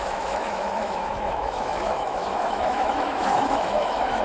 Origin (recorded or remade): remade